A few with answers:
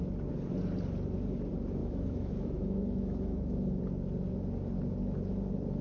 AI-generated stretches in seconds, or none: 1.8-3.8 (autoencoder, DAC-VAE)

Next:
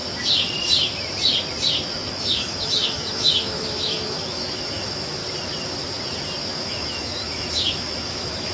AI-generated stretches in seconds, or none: 2.1-5.2 (autoencoder, DAC-VAE); 6.5-8.5

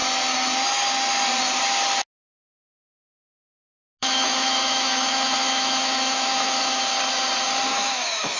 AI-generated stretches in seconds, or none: 4.0-6.8 (autoencoder, DAC-VAE); 7.7-8.4

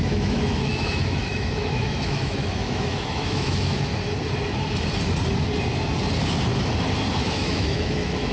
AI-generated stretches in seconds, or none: 0.0-3.9 (autoencoder, DAC-VAE); 7.1-8.3

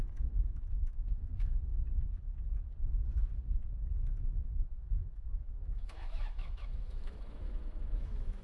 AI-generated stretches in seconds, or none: 0.0-1.7 (autoencoder, DAC-VAE); 4.7-8.4